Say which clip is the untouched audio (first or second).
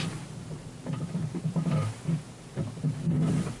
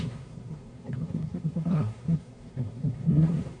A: first